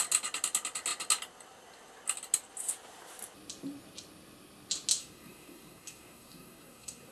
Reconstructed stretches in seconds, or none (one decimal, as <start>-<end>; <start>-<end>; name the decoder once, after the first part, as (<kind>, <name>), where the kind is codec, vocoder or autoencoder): 5.0-7.1 (codec, SNAC)